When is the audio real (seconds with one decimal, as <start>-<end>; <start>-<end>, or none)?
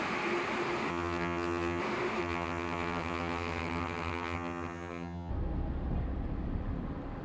0.0-0.9; 1.8-2.2; 5.3-7.2